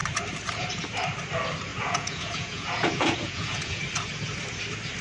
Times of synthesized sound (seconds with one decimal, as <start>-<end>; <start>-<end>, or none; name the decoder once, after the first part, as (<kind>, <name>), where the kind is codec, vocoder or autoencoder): 1.7-3.8 (vocoder, Vocos)

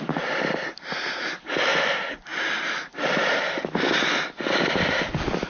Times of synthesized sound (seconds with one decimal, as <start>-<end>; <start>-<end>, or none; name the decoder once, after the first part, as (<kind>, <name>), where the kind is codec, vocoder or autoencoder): none

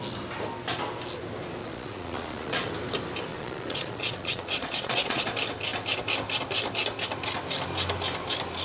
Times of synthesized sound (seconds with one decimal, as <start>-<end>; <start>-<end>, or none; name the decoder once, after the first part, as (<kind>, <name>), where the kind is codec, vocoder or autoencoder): 1.6-2.7 (vocoder, Vocos); 3.3-5.2

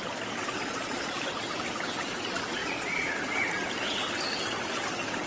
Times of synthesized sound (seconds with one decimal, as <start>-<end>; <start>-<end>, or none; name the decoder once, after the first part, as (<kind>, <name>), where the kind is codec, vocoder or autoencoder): 0.7-1.2 (vocoder, Vocos); 2.6-3.1

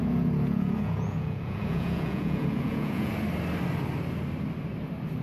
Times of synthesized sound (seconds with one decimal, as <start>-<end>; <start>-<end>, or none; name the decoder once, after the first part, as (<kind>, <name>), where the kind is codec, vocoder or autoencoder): 0.0-3.1 (vocoder, Vocos)

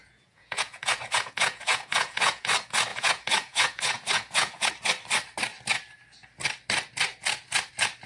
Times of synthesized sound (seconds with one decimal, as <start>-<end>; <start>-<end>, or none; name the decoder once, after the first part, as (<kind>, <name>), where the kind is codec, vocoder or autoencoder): 0.0-2.5 (vocoder, Vocos); 2.9-4.7

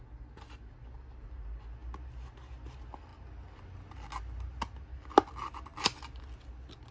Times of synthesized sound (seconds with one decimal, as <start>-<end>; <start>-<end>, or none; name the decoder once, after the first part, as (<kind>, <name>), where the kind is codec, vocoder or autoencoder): none